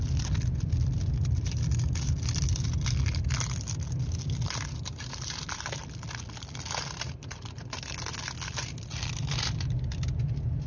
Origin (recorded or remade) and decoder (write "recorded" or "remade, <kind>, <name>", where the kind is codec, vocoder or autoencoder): recorded